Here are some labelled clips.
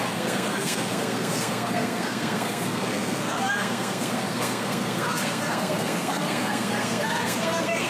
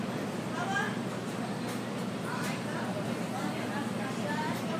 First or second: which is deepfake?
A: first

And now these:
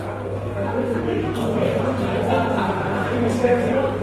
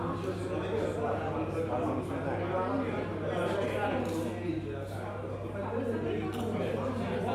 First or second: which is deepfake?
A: first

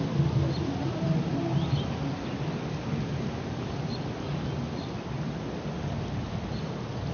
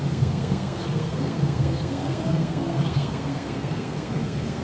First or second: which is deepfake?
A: second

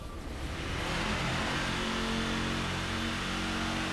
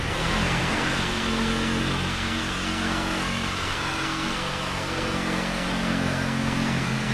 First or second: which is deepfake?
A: second